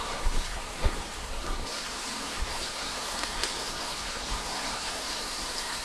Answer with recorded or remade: remade